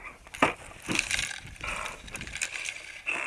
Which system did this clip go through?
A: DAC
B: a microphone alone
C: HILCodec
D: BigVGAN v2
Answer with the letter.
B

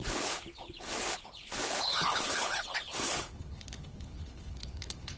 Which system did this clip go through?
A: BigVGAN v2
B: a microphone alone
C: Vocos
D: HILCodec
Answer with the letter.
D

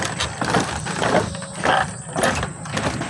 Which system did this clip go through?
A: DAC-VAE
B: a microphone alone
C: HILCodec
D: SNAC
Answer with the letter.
B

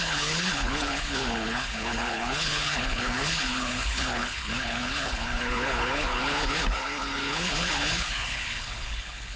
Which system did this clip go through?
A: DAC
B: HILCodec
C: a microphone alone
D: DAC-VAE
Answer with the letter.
B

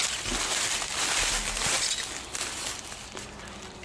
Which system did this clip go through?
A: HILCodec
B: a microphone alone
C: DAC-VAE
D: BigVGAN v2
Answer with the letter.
B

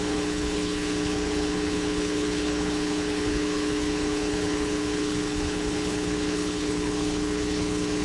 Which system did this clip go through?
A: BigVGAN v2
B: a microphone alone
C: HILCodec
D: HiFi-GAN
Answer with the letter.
C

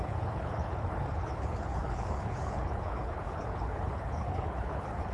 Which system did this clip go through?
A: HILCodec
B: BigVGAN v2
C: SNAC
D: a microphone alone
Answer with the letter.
A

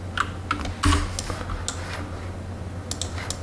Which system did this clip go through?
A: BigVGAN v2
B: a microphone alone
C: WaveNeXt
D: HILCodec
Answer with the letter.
B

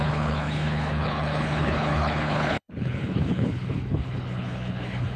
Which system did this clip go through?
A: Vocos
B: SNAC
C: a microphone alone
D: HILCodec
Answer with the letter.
D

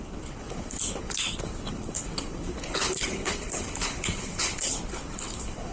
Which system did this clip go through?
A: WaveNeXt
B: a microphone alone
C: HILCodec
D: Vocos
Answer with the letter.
C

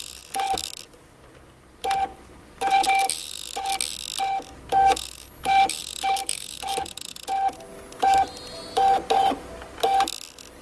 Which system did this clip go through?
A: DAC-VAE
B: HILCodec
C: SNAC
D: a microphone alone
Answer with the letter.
D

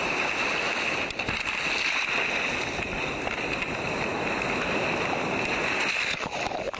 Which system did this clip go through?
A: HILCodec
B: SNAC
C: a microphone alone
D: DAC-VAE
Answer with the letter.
C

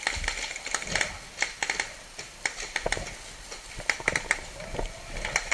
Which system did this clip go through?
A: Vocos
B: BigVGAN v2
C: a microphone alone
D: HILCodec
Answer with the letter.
C